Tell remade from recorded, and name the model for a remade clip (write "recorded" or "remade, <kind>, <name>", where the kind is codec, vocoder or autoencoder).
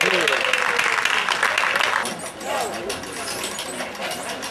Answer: recorded